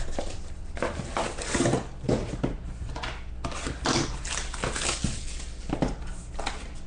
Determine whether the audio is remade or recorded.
recorded